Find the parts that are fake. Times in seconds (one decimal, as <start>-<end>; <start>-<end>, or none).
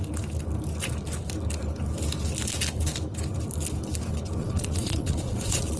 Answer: 4.4-5.8